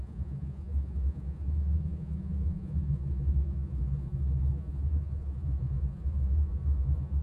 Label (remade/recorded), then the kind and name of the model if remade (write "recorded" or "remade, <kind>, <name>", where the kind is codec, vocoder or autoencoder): remade, vocoder, Vocos